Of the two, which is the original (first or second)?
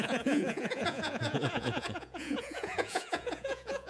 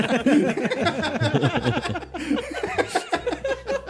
second